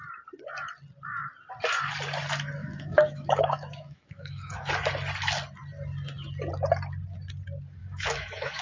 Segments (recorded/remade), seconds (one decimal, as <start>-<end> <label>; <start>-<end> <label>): 0.0-2.6 recorded; 2.6-4.7 remade; 4.7-7.8 recorded; 7.8-8.6 remade